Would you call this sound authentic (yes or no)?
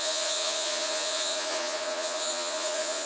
no